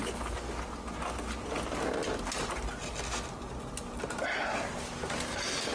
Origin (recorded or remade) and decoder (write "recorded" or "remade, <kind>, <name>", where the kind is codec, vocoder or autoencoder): recorded